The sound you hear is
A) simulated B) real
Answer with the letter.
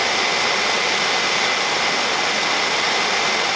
B